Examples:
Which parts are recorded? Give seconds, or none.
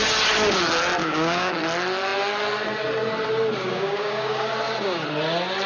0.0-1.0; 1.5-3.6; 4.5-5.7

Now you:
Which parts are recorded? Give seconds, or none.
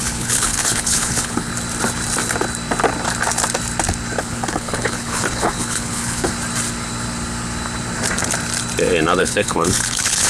1.5-4.2; 6.3-9.2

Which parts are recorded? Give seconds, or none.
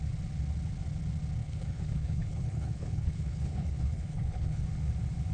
0.0-1.4; 4.6-5.3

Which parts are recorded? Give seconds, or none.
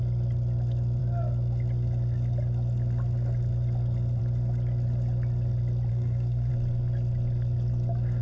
0.0-5.9; 6.5-8.2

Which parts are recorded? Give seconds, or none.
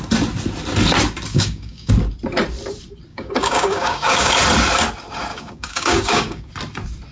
0.0-1.3; 1.9-3.1; 4.3-5.3; 6.5-7.1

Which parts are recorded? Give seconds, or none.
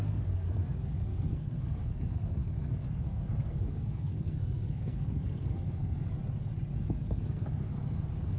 6.2-6.8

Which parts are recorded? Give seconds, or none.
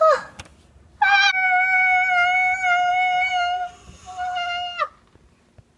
0.0-2.9; 3.7-5.8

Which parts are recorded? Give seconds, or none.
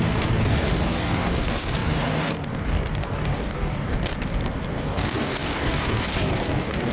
4.1-4.7